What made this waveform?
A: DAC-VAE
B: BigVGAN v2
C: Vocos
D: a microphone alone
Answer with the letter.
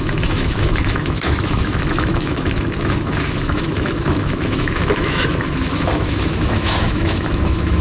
A